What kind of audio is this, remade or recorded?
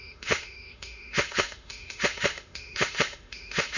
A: remade